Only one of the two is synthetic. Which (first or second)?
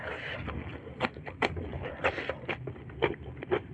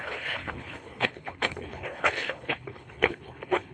second